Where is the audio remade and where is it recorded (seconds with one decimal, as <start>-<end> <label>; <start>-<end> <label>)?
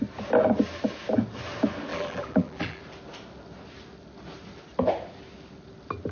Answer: 0.0-1.9 recorded; 1.9-2.8 remade; 2.8-6.1 recorded